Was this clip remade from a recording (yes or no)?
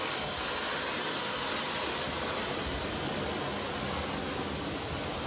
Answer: no